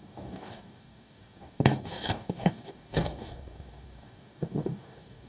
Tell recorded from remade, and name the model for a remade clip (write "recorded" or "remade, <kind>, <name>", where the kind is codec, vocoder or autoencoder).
remade, codec, DAC